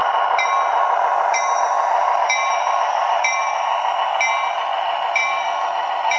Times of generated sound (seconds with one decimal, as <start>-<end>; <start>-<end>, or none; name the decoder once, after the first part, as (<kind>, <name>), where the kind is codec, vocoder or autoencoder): 0.0-3.7 (vocoder, BigVGAN v2); 4.6-6.2